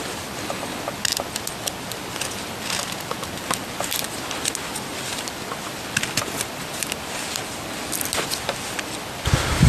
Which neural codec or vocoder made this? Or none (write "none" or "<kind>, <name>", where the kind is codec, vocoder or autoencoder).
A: none